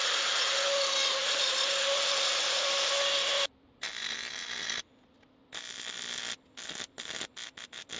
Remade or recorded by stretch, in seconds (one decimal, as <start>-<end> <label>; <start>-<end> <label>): 0.0-8.0 recorded